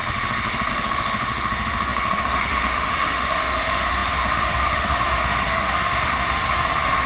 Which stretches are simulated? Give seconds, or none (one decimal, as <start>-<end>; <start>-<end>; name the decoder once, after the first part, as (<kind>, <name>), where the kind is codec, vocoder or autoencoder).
0.0-7.1 (autoencoder, DAC-VAE)